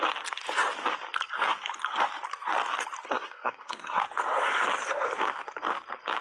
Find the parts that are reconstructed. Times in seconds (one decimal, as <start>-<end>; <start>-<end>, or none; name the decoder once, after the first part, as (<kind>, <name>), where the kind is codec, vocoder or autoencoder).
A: 3.0-4.0 (codec, SNAC)